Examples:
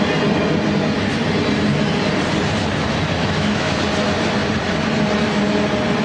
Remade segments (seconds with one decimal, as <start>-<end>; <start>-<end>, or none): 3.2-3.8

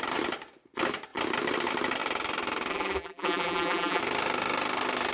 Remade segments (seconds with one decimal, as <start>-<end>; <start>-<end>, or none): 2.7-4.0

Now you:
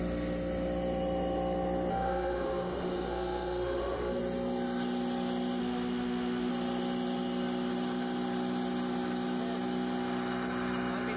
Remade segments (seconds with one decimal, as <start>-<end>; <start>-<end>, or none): 1.9-4.2; 5.6-6.5

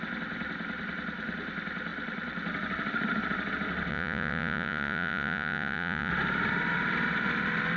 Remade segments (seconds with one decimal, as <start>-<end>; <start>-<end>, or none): 3.9-6.1

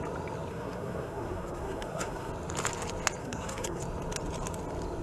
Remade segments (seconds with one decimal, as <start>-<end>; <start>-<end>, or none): 0.5-2.3; 3.2-3.8

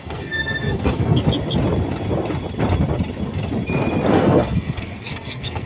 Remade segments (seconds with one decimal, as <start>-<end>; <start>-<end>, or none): 0.0-1.2; 4.1-5.7